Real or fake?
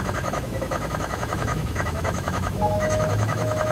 fake